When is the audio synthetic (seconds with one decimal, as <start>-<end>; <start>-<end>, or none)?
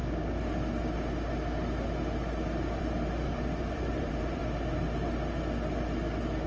2.8-4.4